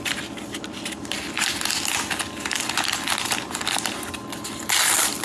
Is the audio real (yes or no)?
yes